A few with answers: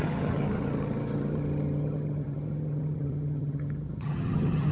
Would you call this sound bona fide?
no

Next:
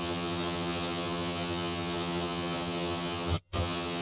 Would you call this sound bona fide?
no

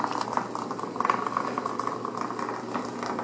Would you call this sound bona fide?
yes